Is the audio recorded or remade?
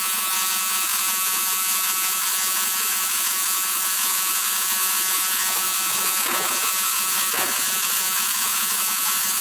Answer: remade